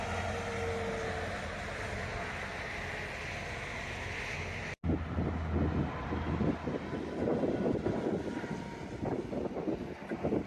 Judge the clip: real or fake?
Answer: real